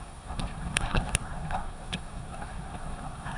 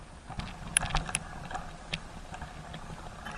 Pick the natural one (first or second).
second